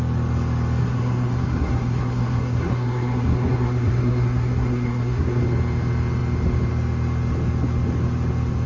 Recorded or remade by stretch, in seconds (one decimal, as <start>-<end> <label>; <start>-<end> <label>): 0.0-0.8 recorded; 0.8-5.4 remade; 5.4-8.7 recorded